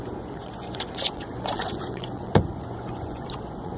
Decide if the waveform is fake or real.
fake